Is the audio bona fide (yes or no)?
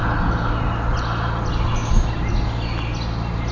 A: yes